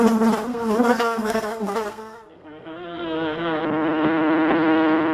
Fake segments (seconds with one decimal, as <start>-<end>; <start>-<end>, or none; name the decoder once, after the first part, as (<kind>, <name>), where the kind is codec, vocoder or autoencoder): 0.5-3.6 (codec, SNAC)